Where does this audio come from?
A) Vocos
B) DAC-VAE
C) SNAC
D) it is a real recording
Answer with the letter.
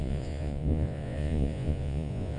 A